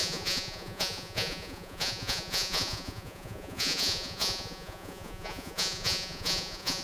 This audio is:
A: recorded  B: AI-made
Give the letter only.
B